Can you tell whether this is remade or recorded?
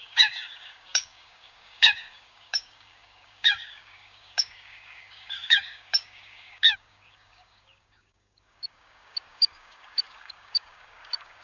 remade